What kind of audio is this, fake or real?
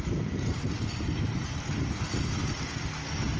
real